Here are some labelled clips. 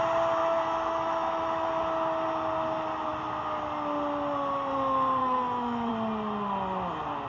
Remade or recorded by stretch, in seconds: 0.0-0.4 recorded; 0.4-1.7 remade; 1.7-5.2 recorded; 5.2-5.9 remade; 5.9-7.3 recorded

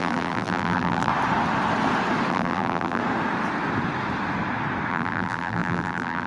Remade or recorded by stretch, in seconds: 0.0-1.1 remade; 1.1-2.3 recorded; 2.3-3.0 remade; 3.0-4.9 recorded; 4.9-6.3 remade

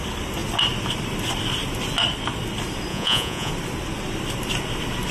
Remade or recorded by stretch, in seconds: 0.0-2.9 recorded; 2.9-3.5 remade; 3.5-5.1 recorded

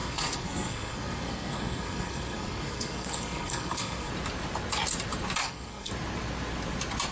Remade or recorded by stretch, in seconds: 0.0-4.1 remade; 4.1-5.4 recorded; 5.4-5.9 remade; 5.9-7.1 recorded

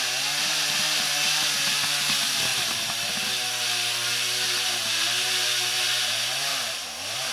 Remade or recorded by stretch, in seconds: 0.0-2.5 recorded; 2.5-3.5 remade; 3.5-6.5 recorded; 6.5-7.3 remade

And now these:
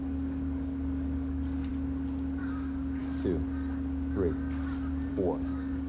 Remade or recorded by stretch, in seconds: 0.0-1.7 remade; 1.7-2.4 recorded; 2.4-3.0 remade; 3.0-5.1 recorded; 5.1-5.9 remade